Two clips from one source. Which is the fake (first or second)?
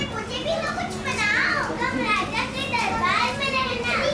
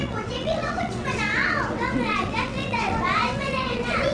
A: second